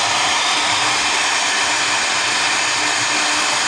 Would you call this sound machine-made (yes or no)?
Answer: no